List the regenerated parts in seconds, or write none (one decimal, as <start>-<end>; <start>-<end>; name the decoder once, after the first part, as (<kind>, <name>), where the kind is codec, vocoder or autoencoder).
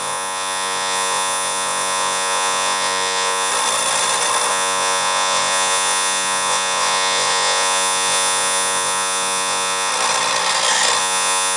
0.0-3.5 (vocoder, Vocos); 4.5-9.9; 11.0-11.6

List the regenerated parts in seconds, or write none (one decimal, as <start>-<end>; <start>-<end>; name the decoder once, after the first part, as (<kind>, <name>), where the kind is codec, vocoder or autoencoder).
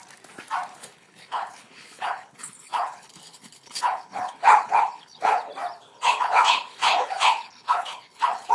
0.7-5.5 (codec, HILCodec); 5.9-8.5